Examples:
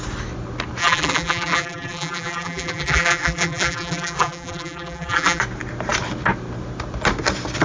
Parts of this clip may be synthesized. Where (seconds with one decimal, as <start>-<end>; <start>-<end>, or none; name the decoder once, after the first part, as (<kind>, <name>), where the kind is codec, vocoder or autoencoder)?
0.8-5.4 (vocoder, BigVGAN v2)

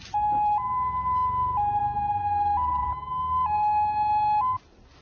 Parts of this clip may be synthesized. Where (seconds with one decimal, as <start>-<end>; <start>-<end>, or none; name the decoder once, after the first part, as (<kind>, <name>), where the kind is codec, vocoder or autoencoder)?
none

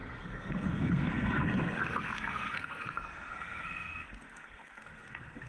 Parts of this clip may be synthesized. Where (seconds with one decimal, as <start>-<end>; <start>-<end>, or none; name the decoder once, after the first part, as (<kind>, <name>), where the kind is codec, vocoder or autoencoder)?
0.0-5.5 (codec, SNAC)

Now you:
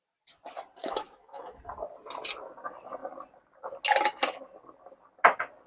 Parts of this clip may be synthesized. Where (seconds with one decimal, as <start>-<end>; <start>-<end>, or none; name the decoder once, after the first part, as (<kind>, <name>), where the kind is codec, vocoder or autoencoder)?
0.8-1.6 (autoencoder, DAC-VAE)

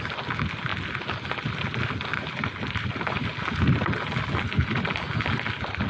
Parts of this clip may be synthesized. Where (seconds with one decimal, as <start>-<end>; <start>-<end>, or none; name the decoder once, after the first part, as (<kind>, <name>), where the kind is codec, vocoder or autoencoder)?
none

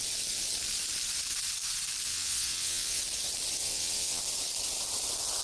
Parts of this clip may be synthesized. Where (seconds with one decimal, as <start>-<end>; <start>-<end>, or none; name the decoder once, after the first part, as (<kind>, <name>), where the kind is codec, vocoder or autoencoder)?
2.1-3.0 (vocoder, WaveNeXt); 3.6-4.2

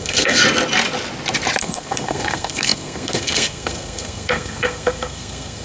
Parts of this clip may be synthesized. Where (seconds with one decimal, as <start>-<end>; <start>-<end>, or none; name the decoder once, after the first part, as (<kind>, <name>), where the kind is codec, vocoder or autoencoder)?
0.0-0.4 (codec, SNAC); 1.6-5.6